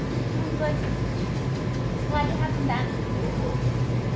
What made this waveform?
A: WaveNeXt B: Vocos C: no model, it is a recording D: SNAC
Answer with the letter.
C